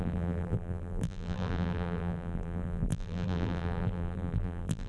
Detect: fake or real fake